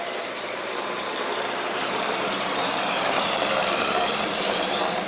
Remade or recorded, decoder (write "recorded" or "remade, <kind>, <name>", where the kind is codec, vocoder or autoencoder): remade, vocoder, BigVGAN v2